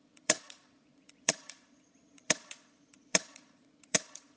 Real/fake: fake